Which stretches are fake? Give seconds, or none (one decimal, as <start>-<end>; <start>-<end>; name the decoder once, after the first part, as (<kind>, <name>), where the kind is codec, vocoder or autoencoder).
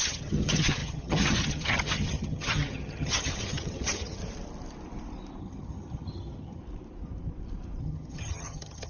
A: 0.0-4.2 (vocoder, HiFi-GAN); 5.4-6.6; 7.8-8.9